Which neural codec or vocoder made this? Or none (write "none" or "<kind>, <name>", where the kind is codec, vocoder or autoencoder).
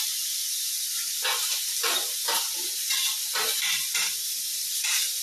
vocoder, BigVGAN v2